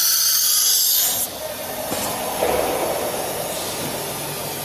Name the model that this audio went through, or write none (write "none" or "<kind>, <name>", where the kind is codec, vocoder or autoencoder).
none